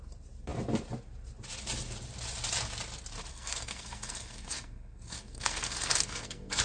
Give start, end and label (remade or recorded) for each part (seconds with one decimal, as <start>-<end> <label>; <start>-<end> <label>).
0.0-3.3 recorded; 3.3-6.6 remade